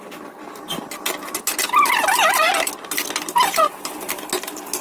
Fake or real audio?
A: real